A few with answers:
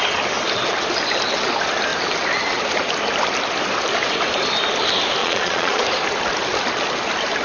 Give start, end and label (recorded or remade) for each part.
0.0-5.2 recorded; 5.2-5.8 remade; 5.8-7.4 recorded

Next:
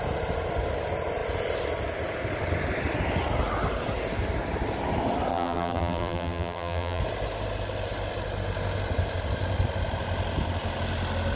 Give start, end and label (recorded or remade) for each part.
0.0-5.3 recorded; 5.3-7.0 remade; 7.0-11.4 recorded